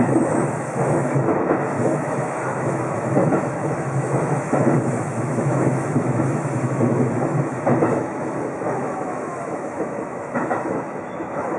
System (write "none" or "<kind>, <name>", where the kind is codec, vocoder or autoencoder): autoencoder, DAC-VAE